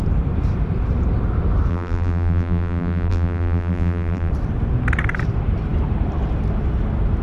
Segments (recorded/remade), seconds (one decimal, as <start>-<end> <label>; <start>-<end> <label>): 0.0-1.7 recorded; 1.7-4.3 remade; 4.3-7.2 recorded